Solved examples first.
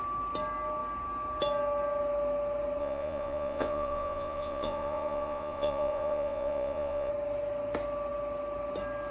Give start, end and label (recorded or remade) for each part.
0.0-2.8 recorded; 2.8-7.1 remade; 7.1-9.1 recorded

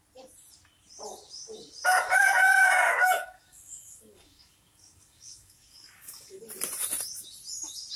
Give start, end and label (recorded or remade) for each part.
0.0-1.8 recorded; 1.8-6.4 remade; 6.4-8.0 recorded

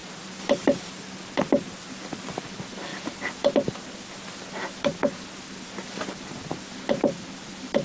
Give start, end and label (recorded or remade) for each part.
0.0-7.8 recorded

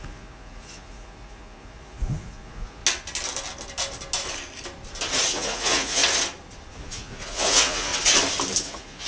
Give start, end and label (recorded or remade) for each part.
0.0-2.8 remade; 2.8-5.3 recorded; 5.3-6.0 remade; 6.0-6.7 recorded; 6.7-7.9 remade; 7.9-8.6 recorded; 8.6-9.1 remade

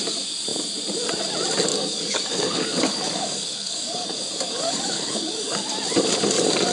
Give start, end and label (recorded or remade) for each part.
0.0-1.7 recorded; 1.7-5.7 remade; 5.7-6.7 recorded

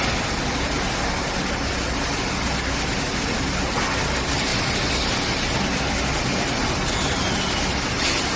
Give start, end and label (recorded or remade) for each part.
0.0-8.4 recorded

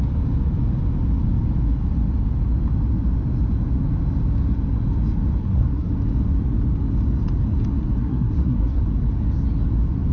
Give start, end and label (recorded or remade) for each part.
0.0-5.4 recorded; 5.4-5.9 remade; 5.9-8.0 recorded; 8.0-8.8 remade; 8.8-10.1 recorded

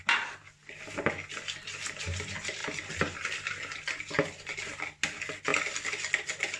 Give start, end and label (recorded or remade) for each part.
0.0-6.6 recorded